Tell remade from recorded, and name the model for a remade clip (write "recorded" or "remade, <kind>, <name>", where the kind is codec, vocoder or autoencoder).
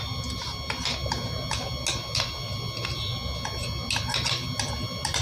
recorded